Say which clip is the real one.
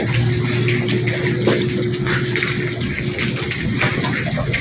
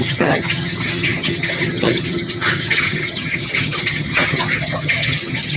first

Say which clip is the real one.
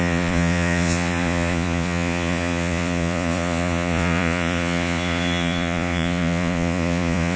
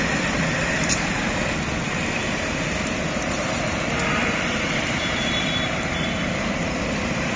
second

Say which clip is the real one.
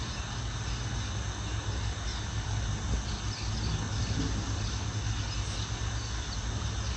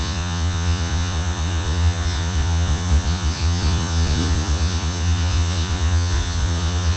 first